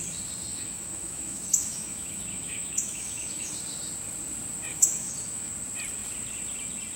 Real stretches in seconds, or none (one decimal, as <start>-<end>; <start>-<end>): 0.0-0.5; 3.5-4.7; 5.5-7.0